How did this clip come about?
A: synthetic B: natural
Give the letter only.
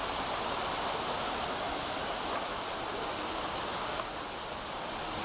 B